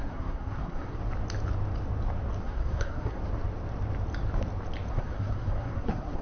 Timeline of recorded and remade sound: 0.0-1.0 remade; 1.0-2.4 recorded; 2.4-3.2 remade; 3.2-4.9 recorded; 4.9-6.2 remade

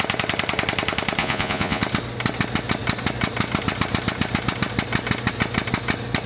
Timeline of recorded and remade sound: 0.0-1.2 recorded; 1.2-1.8 remade; 1.8-6.3 recorded

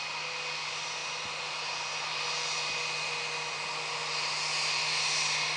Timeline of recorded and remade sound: 0.0-5.6 recorded

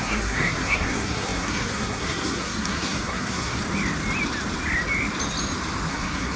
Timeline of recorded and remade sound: 0.0-3.6 remade; 3.6-5.9 recorded; 5.9-6.4 remade

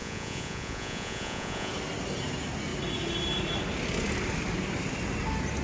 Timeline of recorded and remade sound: 0.0-1.7 remade; 1.7-5.6 recorded